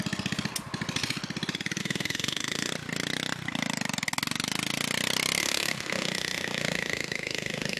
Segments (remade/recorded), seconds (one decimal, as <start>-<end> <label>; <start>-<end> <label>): 0.0-1.8 recorded; 1.8-2.7 remade; 2.7-5.4 recorded; 5.4-7.8 remade